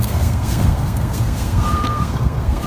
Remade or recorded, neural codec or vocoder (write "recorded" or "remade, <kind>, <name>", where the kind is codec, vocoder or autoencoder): remade, codec, SNAC